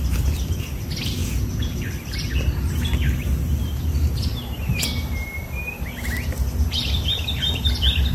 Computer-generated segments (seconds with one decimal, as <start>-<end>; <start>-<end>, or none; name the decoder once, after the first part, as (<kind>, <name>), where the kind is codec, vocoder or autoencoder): 1.2-1.8 (vocoder, Vocos)